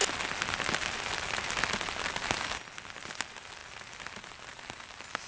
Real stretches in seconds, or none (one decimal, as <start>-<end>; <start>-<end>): 0.0-5.3